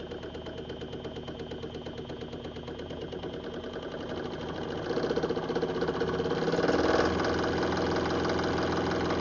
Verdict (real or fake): real